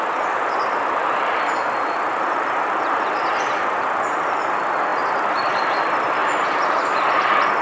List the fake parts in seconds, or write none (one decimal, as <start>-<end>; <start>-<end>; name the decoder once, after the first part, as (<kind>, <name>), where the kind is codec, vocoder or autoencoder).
0.0-4.9 (vocoder, BigVGAN v2); 5.6-6.2; 6.7-7.6